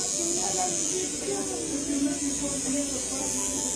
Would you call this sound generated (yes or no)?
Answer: no